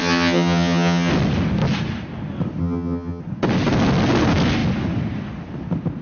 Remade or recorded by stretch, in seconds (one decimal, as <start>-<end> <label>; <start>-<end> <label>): 0.0-1.1 remade; 1.1-2.6 recorded; 2.6-3.2 remade; 3.2-6.0 recorded